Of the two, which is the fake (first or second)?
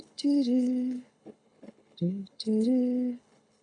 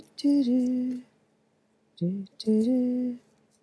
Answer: first